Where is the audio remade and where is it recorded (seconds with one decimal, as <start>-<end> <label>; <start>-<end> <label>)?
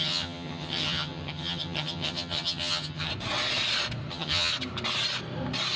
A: 0.0-3.1 remade; 3.1-4.1 recorded; 4.1-4.5 remade; 4.5-5.8 recorded